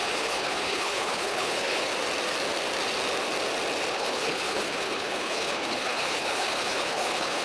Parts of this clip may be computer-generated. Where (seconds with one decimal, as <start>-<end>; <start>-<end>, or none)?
0.0-1.9; 3.9-7.4